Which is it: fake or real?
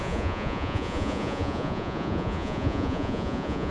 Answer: fake